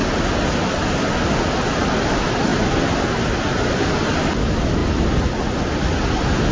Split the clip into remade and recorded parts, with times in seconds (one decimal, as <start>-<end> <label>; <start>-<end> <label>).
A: 0.0-6.5 recorded